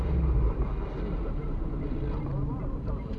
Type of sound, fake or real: real